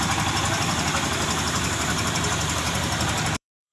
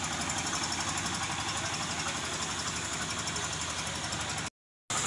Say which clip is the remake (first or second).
first